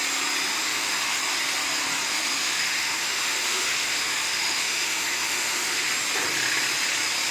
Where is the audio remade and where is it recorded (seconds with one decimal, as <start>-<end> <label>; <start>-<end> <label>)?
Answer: 0.0-0.5 recorded; 0.5-1.2 remade; 1.2-2.1 recorded; 2.1-5.9 remade; 5.9-7.3 recorded